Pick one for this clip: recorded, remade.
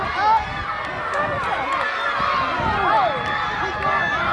recorded